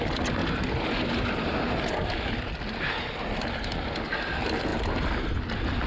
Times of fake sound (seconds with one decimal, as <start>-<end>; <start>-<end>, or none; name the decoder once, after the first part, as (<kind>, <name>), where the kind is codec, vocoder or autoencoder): 4.7-5.4 (vocoder, BigVGAN v2)